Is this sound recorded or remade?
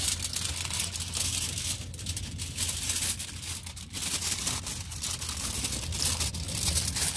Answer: recorded